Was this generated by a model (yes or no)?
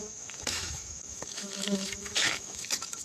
yes